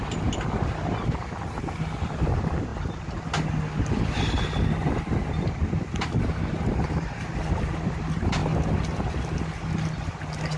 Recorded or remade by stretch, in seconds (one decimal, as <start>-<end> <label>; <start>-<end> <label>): 0.0-10.6 recorded